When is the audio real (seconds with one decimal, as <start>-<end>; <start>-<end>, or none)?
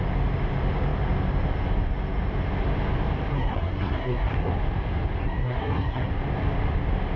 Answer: 0.0-3.3; 4.5-5.2; 6.1-7.2